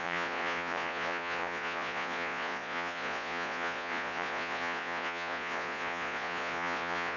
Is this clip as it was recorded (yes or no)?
no